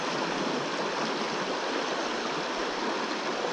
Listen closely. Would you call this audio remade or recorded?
recorded